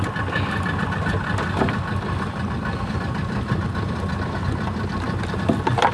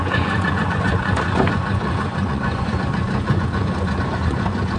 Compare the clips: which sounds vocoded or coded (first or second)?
second